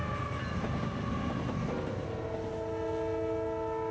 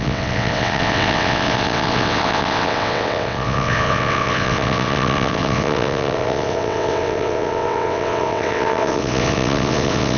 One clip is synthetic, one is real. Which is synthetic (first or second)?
second